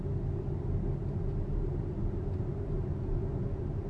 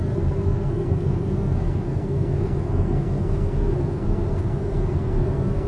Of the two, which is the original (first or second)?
first